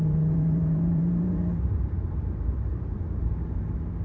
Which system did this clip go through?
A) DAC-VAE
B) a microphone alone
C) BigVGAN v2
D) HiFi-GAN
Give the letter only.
C